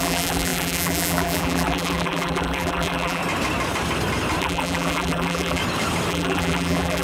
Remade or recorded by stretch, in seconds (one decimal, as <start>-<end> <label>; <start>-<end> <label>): 0.0-3.2 remade; 3.2-4.4 recorded; 4.4-5.6 remade; 5.6-6.1 recorded; 6.1-7.0 remade